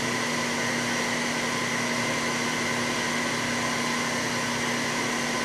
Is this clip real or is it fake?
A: real